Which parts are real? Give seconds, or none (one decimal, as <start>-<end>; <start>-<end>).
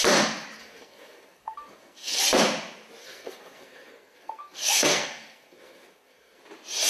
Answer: 0.0-0.6; 2.2-3.0; 6.4-6.9